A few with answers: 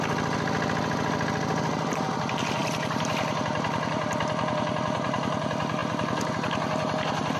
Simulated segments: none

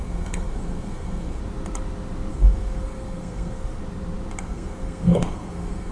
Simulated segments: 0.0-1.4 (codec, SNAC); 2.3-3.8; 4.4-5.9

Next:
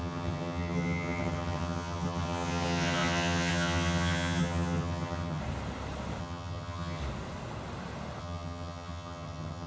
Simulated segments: 0.0-5.4 (vocoder, HiFi-GAN); 6.2-7.0; 8.2-9.7

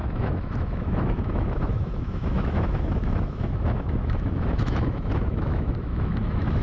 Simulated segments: 0.0-6.6 (autoencoder, DAC-VAE)